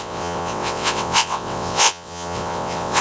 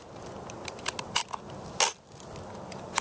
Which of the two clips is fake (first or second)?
first